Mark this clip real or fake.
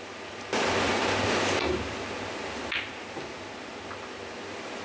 real